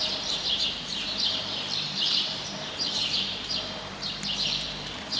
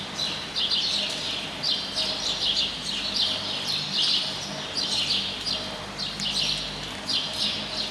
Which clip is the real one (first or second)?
second